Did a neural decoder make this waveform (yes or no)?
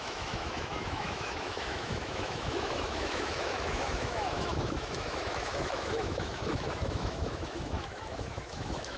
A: yes